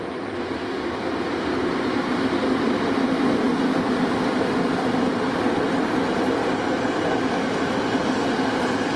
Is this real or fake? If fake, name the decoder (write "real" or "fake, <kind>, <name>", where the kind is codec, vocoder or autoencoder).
real